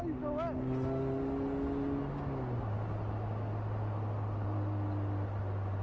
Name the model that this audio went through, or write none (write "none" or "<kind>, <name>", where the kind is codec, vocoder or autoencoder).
none